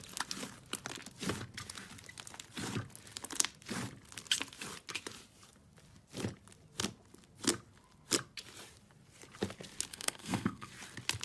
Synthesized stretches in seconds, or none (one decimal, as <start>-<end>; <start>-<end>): 9.9-10.7